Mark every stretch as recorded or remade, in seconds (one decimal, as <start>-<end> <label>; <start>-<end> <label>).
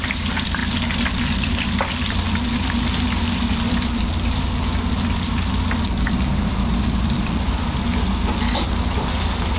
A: 0.0-9.6 recorded